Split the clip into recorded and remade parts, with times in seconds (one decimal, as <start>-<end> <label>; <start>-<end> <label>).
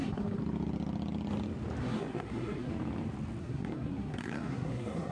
0.0-0.4 remade; 0.4-1.8 recorded; 1.8-2.7 remade; 2.7-3.4 recorded; 3.4-5.1 remade